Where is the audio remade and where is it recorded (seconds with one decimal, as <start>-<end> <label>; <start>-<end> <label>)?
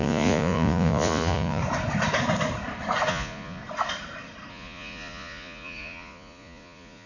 0.0-1.6 remade; 1.6-3.1 recorded; 3.1-3.6 remade; 3.6-4.5 recorded; 4.5-7.1 remade